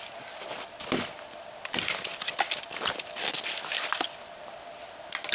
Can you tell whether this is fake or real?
fake